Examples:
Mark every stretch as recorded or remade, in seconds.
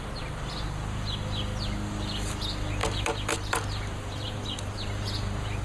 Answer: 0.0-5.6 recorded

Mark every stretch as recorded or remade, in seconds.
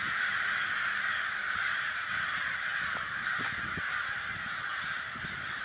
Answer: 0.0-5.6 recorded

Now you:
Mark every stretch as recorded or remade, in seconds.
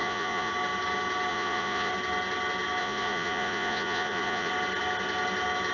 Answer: 0.0-0.5 remade; 0.5-1.3 recorded; 1.3-1.9 remade; 1.9-2.8 recorded; 2.8-4.5 remade; 4.5-5.7 recorded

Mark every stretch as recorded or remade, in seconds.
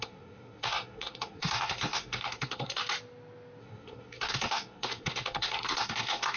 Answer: 0.0-2.8 remade; 2.8-3.6 recorded; 3.6-6.4 remade